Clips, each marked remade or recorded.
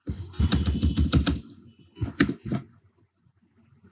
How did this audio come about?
recorded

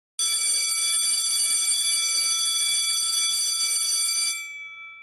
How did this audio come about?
recorded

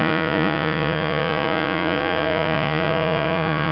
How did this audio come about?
remade